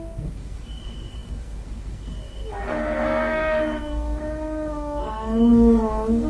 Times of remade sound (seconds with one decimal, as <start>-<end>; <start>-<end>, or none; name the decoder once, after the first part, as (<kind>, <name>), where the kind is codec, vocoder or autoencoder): 0.0-6.3 (codec, SNAC)

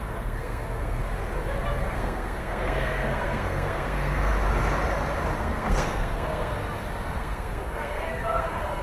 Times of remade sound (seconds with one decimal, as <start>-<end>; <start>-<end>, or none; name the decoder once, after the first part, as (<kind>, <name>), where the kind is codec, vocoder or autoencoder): 0.0-1.0 (codec, SNAC); 1.8-4.3; 5.4-6.6; 7.2-8.8

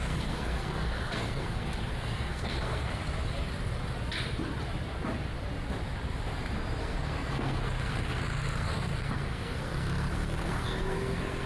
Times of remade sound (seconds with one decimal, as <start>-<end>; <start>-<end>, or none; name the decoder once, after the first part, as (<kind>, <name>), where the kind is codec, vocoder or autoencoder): 0.0-3.0 (codec, SNAC); 6.8-11.5

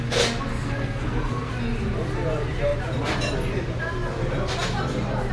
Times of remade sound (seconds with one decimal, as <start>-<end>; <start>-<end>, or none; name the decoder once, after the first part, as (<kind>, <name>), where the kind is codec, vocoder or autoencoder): 0.5-1.5 (codec, SNAC)

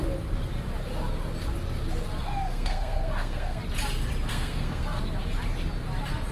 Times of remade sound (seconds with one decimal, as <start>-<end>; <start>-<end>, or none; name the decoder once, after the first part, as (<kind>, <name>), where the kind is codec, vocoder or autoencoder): 2.2-3.6 (codec, SNAC); 4.3-5.0

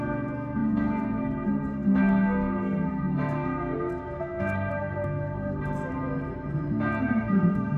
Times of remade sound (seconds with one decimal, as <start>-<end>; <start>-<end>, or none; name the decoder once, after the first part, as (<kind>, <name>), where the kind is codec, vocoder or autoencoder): 0.0-5.9 (codec, SNAC); 7.0-7.8

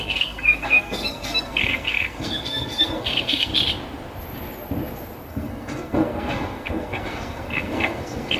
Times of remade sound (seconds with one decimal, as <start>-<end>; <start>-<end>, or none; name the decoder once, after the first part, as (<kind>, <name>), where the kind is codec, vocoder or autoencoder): 0.0-3.5 (codec, SNAC); 5.3-8.4

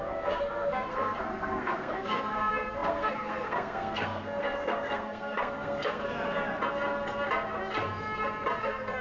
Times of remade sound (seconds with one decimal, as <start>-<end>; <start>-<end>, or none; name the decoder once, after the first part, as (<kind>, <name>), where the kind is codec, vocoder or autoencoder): 0.0-6.0 (codec, SNAC); 8.6-9.0